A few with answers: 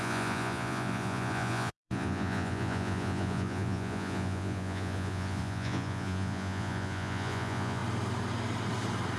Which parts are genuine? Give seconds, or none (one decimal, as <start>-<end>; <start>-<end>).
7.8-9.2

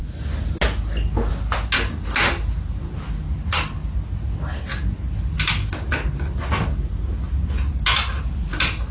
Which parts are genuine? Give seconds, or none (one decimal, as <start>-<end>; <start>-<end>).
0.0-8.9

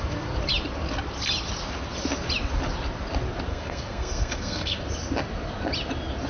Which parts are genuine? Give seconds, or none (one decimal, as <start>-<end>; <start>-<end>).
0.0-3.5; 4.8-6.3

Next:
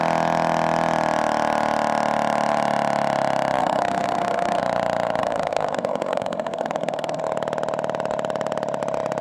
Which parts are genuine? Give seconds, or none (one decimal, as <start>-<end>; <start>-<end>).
0.0-3.6; 4.6-5.2; 7.2-9.2

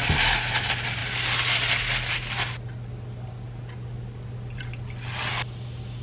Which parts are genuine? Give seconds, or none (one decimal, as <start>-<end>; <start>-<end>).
0.0-6.0

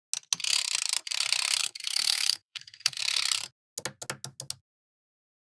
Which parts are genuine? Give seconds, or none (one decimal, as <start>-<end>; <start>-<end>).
0.0-1.6; 3.0-5.4

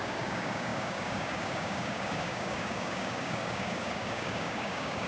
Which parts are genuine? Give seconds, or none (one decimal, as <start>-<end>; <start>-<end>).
none

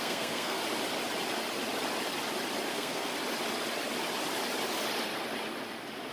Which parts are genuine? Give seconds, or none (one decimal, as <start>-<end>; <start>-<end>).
0.6-2.7; 3.1-6.1